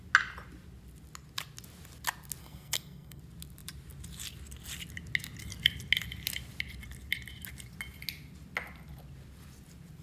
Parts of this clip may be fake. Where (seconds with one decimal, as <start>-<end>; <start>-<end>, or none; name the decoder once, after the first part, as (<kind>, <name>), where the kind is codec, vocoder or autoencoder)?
2.4-3.2 (codec, SNAC)